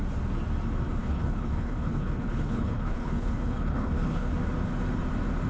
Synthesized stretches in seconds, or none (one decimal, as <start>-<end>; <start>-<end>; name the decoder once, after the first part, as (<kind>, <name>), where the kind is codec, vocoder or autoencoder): 1.0-4.3 (codec, HILCodec)